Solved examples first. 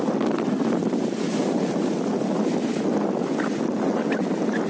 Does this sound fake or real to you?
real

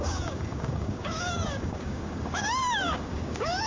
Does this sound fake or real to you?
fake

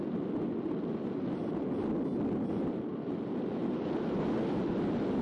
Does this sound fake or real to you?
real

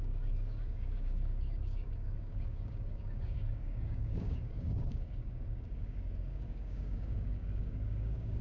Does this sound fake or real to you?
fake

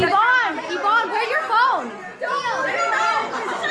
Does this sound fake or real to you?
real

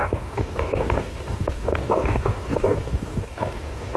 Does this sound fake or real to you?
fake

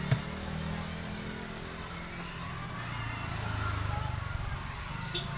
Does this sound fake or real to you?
real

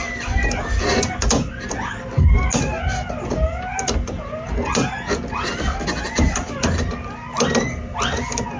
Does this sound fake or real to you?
real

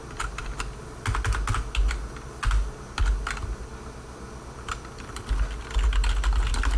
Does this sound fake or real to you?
real